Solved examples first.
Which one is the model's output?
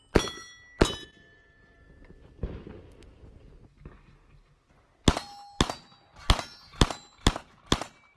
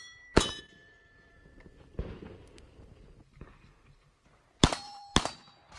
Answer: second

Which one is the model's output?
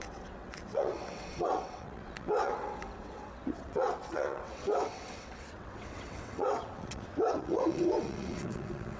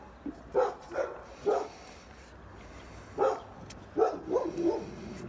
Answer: first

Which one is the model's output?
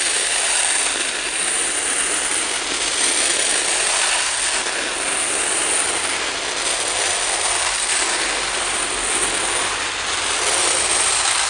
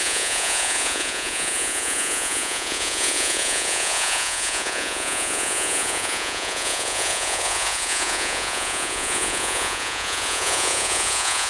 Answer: second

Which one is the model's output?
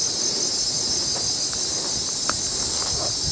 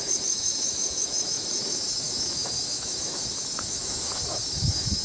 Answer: second